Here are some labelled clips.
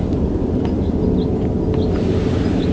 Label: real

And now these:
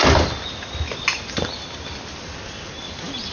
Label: real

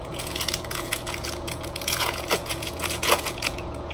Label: fake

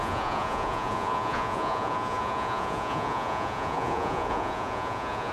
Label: fake